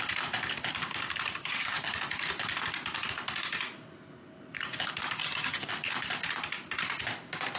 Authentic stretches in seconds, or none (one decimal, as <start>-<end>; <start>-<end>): 0.0-1.4; 1.9-5.2; 5.7-7.6